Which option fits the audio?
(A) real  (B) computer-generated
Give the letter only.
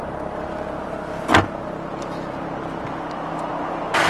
A